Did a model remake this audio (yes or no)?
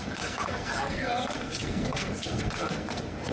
yes